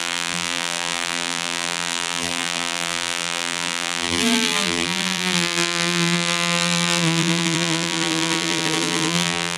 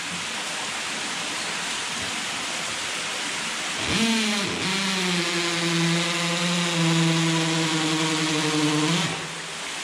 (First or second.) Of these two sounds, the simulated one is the first